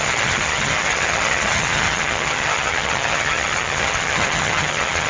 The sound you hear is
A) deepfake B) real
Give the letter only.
A